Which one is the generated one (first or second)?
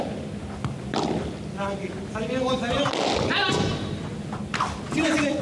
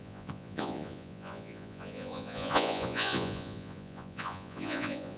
second